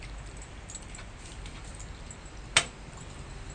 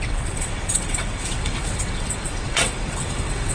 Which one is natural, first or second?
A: first